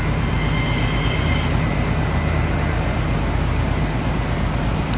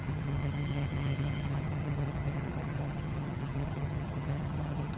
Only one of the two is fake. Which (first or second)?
second